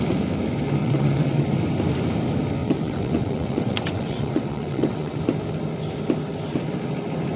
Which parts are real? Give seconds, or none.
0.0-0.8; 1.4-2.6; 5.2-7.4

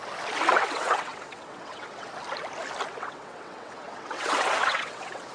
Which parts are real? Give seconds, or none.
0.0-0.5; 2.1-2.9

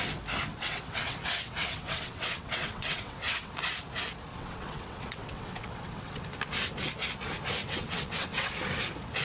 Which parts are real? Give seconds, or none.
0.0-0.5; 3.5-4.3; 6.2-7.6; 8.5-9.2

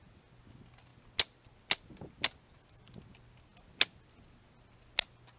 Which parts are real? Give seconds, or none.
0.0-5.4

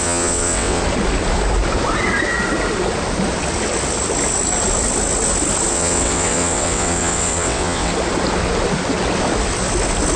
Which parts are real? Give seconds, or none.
0.8-5.7; 7.9-10.2